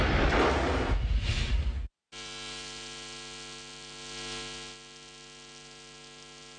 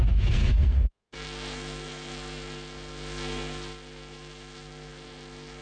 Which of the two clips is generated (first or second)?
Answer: second